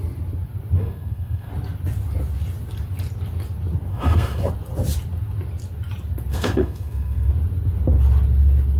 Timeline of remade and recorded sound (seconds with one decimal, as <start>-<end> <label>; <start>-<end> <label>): 0.0-0.8 recorded; 0.8-1.5 remade; 1.5-3.9 recorded; 3.9-4.5 remade; 4.5-6.3 recorded; 6.3-7.3 remade; 7.3-8.8 recorded